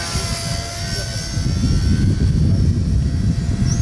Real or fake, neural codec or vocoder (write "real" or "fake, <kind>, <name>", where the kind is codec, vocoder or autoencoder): real